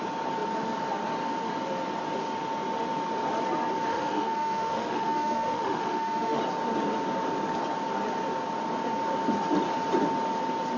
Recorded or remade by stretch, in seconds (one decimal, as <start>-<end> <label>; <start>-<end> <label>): 0.0-3.9 recorded; 3.9-6.4 remade; 6.4-10.8 recorded